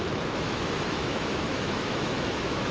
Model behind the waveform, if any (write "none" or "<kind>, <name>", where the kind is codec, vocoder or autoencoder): autoencoder, DAC-VAE